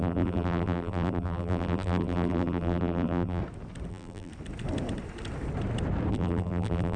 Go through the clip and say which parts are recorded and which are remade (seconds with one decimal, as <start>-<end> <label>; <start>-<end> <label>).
0.0-3.4 remade; 3.4-3.9 recorded; 3.9-4.3 remade; 4.3-6.1 recorded; 6.1-7.0 remade

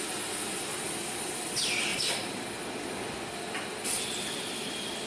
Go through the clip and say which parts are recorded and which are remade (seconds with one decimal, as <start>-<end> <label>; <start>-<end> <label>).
0.0-1.9 recorded; 1.9-2.5 remade; 2.5-5.1 recorded

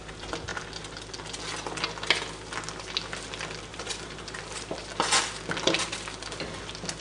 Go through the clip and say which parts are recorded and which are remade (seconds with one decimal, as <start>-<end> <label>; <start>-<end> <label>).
0.0-3.7 recorded; 3.7-4.8 remade; 4.8-7.0 recorded

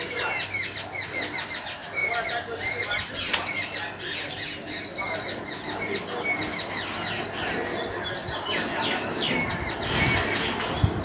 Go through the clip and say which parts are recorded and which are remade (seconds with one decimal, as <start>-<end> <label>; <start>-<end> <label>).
0.0-2.0 recorded; 2.0-3.8 remade; 3.8-8.2 recorded; 8.2-9.1 remade; 9.1-11.0 recorded